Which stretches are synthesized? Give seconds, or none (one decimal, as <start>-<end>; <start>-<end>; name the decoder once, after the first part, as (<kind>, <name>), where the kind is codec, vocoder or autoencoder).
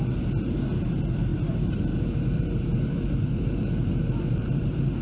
0.0-5.0 (vocoder, BigVGAN v2)